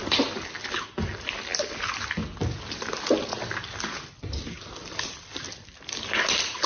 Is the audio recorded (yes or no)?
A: yes